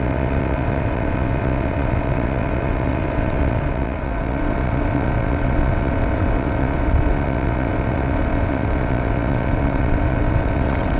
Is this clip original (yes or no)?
no